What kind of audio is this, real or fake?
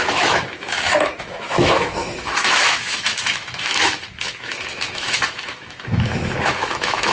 fake